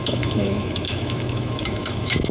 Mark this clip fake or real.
fake